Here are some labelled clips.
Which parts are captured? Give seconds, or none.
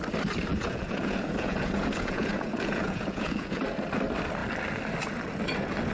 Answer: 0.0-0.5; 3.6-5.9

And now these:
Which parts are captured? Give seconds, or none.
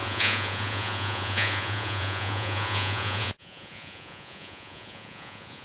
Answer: none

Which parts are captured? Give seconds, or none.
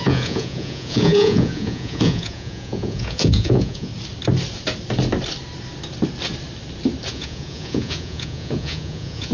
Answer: 3.9-7.1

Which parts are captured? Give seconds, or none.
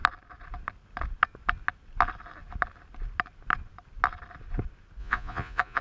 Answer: 0.0-5.0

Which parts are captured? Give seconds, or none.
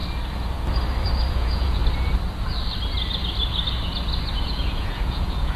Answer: 0.0-1.3; 1.8-4.4